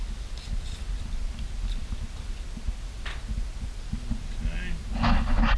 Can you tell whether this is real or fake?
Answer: real